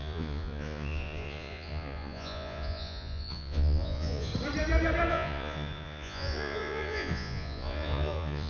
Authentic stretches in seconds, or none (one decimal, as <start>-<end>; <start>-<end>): 4.3-5.1